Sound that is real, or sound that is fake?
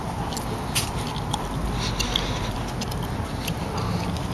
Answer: real